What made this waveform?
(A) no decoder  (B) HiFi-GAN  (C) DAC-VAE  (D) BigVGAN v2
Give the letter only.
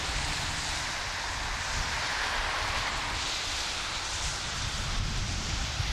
D